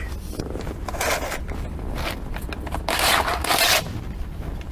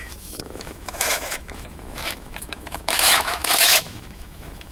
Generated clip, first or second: second